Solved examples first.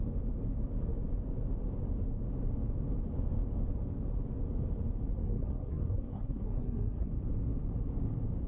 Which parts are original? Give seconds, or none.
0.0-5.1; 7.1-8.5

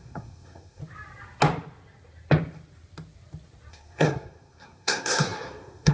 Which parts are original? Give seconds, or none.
0.8-3.7

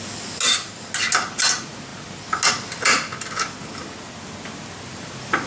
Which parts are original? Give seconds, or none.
0.0-5.5

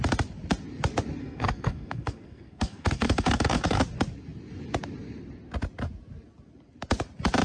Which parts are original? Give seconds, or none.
0.0-1.2; 3.8-7.4